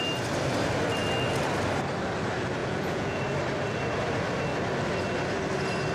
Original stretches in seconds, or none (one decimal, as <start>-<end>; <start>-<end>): 0.0-2.6; 3.2-5.9